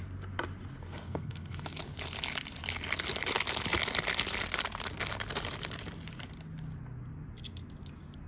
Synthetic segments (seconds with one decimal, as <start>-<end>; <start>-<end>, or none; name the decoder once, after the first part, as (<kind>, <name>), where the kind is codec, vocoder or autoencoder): 0.8-1.8 (codec, SNAC)